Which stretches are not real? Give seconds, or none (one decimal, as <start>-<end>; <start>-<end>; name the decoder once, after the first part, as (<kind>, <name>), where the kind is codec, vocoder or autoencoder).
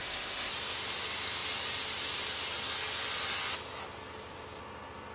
0.0-0.5 (autoencoder, DAC-VAE)